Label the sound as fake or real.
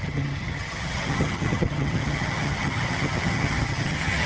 fake